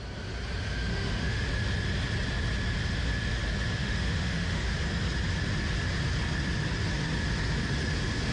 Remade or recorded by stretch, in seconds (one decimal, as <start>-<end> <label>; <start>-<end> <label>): 0.0-0.9 recorded; 0.9-1.4 remade; 1.4-3.8 recorded; 3.8-4.7 remade; 4.7-8.3 recorded